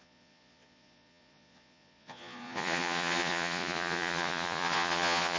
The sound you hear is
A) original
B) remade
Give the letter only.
B